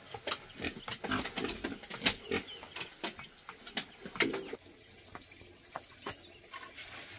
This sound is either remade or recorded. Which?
recorded